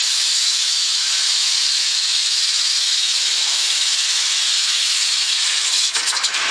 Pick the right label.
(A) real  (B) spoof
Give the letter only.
B